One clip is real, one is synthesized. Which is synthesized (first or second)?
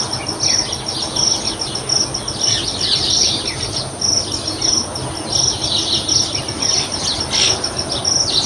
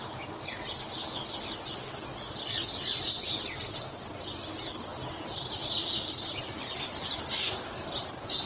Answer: second